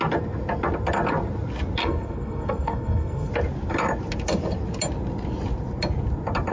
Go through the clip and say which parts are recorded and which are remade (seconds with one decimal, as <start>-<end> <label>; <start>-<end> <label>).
0.0-1.8 recorded; 1.8-3.3 remade; 3.3-6.5 recorded